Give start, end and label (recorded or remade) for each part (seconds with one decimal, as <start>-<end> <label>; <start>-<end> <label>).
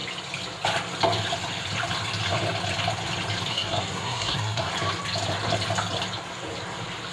0.0-3.5 recorded; 3.5-4.7 remade; 4.7-7.1 recorded